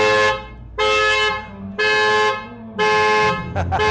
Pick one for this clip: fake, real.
real